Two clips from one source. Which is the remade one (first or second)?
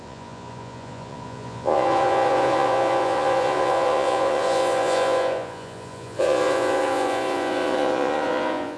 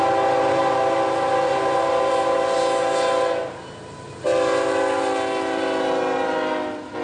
first